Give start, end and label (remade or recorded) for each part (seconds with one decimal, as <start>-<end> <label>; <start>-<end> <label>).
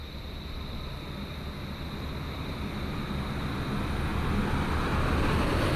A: 0.0-5.8 recorded